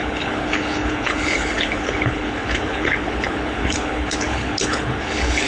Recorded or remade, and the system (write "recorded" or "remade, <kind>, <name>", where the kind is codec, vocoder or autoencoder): remade, codec, HILCodec